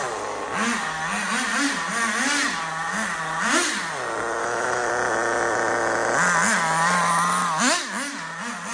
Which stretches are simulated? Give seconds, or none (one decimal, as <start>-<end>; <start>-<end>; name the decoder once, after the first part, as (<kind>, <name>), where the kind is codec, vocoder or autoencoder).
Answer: 4.4-4.9 (autoencoder, DAC-VAE)